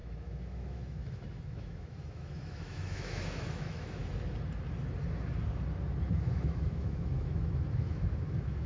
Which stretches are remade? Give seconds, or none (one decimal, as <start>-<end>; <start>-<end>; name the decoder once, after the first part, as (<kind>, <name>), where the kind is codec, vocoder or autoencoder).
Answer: 0.0-4.0 (autoencoder, DAC-VAE); 6.1-8.7